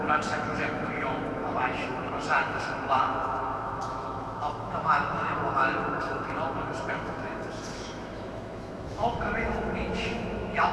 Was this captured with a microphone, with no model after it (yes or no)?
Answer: no